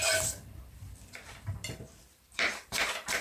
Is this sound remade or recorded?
remade